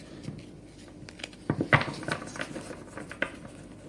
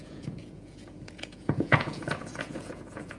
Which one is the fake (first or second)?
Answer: second